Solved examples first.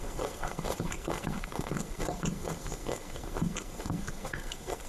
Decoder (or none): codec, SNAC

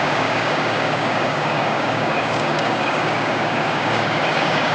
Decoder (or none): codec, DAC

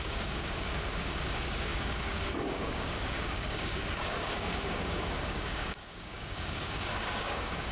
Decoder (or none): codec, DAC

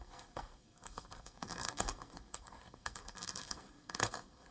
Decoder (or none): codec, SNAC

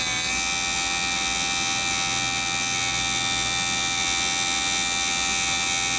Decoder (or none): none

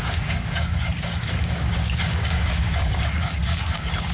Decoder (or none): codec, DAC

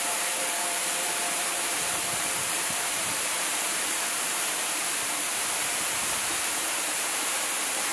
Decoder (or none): vocoder, BigVGAN v2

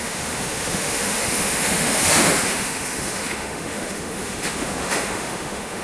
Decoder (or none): autoencoder, DAC-VAE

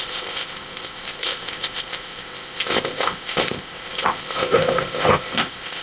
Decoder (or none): codec, ZipCodec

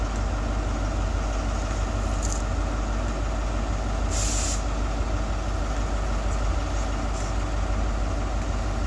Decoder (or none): none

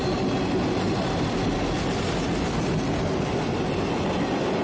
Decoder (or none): none